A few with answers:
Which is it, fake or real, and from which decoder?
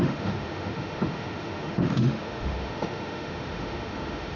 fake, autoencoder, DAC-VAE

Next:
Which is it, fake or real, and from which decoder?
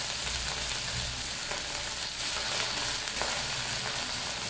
real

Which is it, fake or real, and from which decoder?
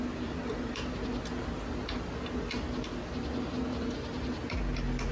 real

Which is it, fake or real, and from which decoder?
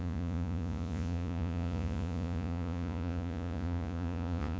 fake, vocoder, Vocos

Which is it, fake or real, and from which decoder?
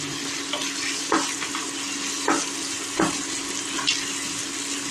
real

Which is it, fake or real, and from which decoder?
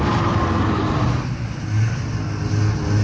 real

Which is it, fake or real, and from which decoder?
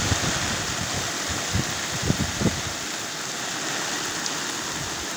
real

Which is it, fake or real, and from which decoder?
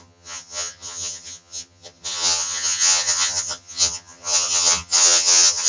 fake, vocoder, HiFi-GAN